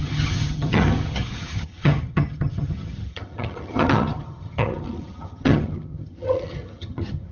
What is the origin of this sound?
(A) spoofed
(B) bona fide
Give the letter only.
A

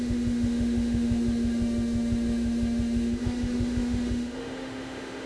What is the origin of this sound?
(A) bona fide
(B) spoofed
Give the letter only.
B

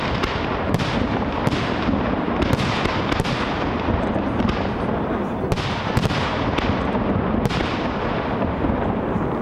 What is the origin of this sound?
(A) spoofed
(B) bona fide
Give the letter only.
B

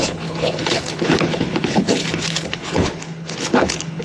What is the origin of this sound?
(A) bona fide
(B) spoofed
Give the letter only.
B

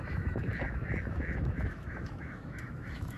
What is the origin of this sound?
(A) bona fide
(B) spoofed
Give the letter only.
B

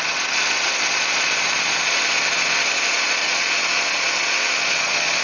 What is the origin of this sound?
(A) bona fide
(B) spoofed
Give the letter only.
B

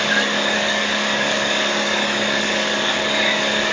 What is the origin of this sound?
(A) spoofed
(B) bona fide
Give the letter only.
A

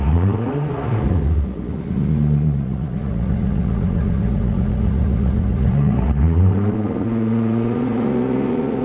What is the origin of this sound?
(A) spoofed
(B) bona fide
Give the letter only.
A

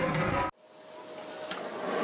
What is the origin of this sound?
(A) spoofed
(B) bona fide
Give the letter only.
B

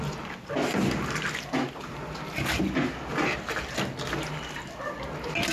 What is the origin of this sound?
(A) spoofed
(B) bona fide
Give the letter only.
B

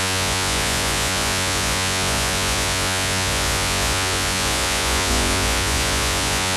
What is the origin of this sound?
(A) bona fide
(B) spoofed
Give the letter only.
B